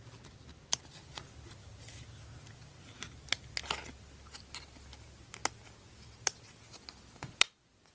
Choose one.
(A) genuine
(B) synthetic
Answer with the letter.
A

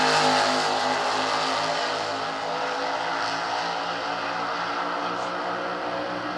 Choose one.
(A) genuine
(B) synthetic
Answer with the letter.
A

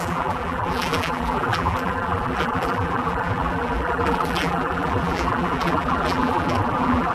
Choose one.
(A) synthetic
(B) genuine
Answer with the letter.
A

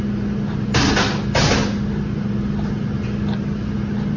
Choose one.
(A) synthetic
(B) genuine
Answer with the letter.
B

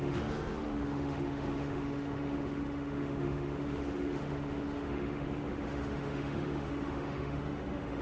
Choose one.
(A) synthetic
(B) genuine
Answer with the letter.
A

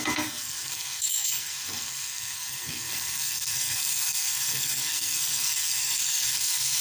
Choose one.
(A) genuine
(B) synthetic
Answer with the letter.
B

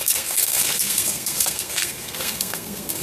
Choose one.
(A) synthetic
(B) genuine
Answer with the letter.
A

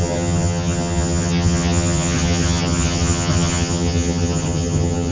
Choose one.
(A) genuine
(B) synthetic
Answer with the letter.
B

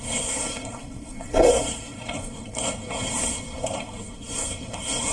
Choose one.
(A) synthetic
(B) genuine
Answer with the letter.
A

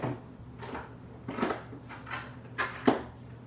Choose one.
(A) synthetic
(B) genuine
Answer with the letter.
B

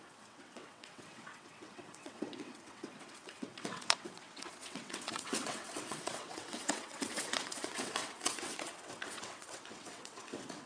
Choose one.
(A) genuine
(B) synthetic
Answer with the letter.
B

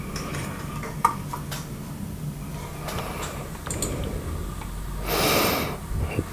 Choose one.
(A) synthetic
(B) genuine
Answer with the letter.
B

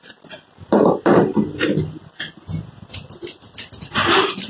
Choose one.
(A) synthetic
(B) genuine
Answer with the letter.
B